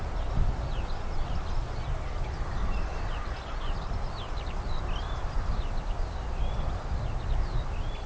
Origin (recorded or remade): recorded